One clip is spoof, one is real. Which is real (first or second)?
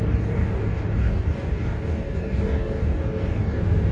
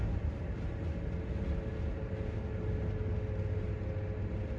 second